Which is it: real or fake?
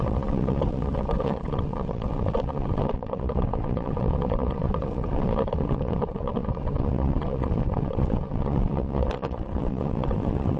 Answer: fake